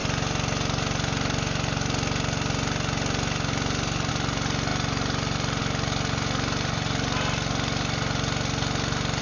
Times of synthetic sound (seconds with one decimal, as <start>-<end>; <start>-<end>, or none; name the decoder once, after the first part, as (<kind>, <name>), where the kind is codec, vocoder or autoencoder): none